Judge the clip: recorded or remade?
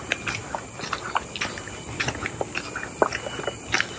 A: recorded